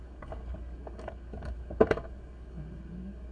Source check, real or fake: fake